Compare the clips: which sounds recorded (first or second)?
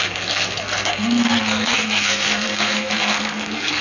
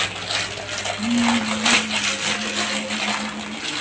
second